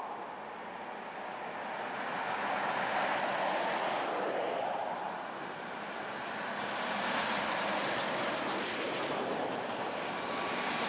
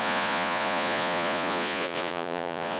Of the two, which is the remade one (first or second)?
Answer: second